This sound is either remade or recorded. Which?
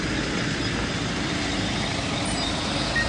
recorded